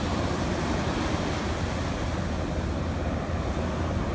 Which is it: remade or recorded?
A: recorded